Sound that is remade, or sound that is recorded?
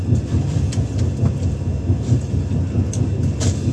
recorded